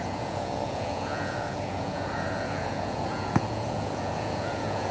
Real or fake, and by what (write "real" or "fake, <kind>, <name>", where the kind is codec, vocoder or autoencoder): fake, vocoder, Vocos